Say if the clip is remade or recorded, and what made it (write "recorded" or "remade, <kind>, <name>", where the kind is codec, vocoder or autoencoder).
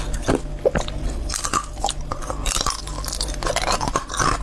recorded